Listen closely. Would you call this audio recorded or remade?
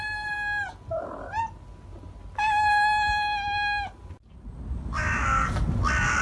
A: recorded